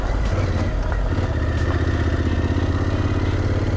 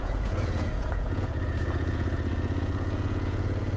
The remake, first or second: second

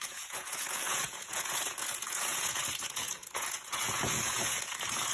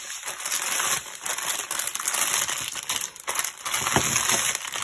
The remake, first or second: first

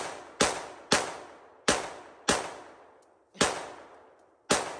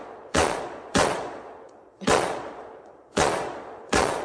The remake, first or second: second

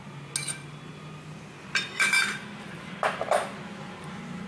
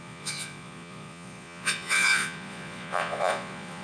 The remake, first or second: second